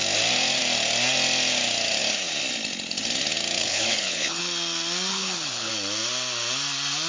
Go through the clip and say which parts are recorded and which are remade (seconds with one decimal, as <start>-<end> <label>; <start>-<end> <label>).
0.0-3.6 recorded; 3.6-4.4 remade; 4.4-5.1 recorded; 5.1-5.7 remade; 5.7-7.1 recorded